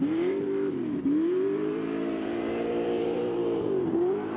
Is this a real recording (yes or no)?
no